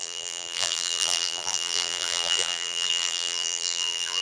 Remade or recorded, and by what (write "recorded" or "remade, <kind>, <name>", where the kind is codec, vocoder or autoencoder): remade, vocoder, BigVGAN v2